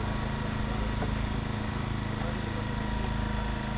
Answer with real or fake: real